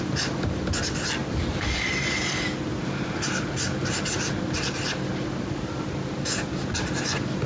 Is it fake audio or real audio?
real